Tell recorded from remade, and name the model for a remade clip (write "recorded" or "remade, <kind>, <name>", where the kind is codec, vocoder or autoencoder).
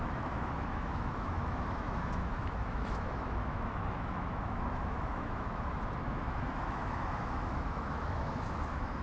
remade, autoencoder, DAC-VAE